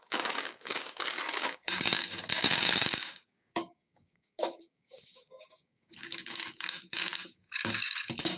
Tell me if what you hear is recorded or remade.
remade